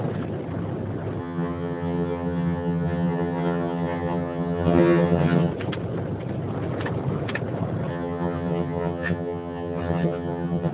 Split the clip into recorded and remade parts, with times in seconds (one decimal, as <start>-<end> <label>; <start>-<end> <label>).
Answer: 0.0-1.2 recorded; 1.2-5.5 remade; 5.5-7.9 recorded; 7.9-10.7 remade